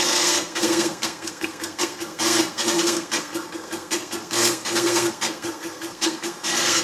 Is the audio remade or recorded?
remade